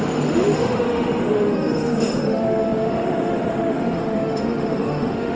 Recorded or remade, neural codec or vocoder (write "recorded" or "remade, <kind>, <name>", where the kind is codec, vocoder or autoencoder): remade, autoencoder, DAC-VAE